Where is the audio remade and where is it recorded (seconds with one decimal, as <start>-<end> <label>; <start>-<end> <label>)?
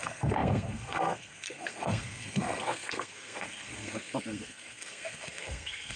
0.0-6.0 remade